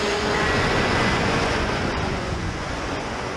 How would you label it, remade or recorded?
remade